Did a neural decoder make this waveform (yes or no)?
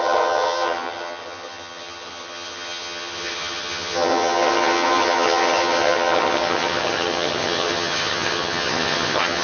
yes